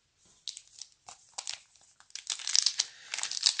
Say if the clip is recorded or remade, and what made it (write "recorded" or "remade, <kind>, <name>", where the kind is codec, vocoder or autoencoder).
recorded